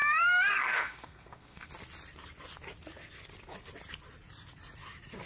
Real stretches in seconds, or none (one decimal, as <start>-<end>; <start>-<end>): 1.7-5.3